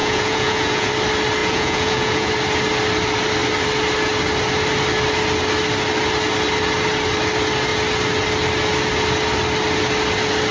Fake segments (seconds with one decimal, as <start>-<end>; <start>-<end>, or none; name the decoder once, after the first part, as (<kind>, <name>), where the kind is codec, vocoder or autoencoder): 0.0-0.9 (vocoder, Vocos); 1.4-2.3